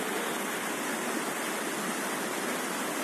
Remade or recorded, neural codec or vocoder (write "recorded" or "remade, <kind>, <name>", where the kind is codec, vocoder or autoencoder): recorded